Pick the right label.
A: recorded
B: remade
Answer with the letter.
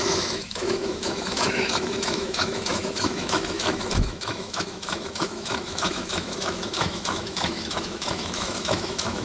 B